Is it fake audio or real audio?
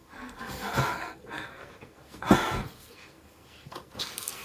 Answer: fake